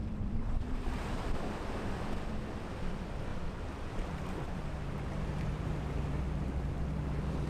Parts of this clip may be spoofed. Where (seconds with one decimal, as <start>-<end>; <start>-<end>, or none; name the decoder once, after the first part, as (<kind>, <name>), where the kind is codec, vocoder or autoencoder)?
0.0-1.2 (vocoder, BigVGAN v2); 3.3-6.0